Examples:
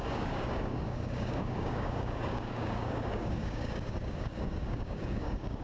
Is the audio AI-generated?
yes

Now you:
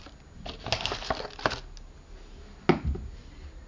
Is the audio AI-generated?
no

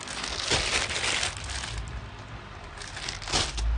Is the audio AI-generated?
no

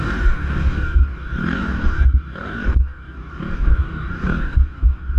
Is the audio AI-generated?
yes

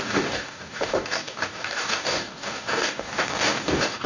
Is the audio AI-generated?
yes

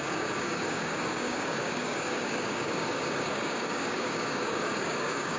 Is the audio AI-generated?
yes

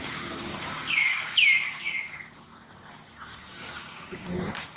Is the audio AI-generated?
yes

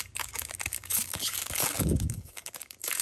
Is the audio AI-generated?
yes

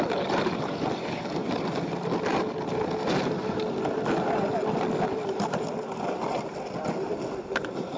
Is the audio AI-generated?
no